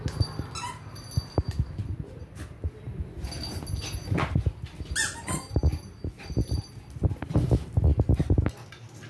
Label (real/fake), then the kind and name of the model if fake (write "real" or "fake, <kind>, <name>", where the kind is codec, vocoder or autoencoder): real